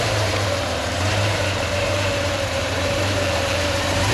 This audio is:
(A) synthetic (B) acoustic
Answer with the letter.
A